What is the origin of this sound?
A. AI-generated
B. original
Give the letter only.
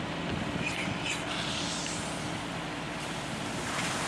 B